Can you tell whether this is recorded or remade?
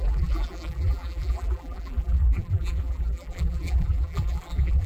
remade